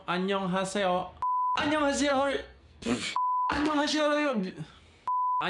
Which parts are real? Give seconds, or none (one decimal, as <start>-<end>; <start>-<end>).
0.0-2.1; 4.5-5.5